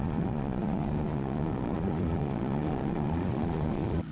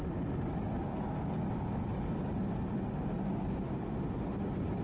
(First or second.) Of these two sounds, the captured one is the second